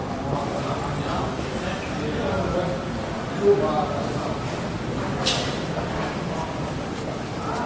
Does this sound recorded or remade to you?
recorded